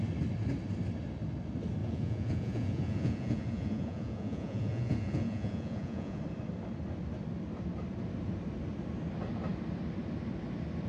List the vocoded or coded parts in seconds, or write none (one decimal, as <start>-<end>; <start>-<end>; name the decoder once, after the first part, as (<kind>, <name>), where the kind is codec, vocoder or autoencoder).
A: 1.8-6.2 (vocoder, Vocos)